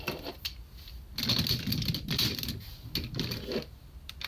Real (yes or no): yes